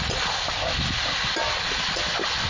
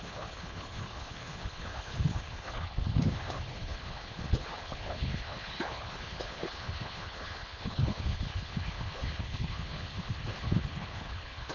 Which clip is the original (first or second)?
first